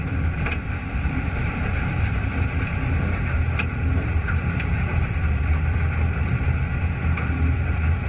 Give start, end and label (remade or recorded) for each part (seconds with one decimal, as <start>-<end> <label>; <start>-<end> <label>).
0.0-2.3 remade; 2.3-4.0 recorded; 4.0-8.1 remade